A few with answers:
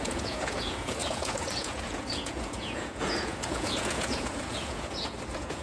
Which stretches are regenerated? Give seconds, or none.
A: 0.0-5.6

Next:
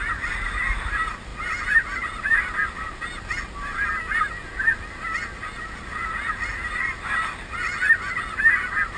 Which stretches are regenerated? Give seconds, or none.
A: none

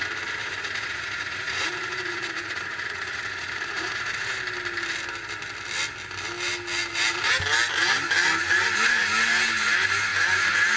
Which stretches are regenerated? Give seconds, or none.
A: 0.4-4.4